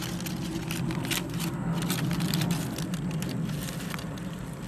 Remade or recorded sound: recorded